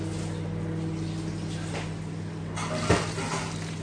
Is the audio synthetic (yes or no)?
no